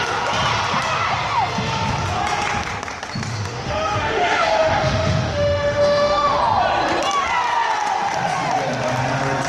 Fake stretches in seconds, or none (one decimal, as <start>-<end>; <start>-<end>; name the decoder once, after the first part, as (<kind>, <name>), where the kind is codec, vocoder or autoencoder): 3.3-6.4 (autoencoder, DAC-VAE)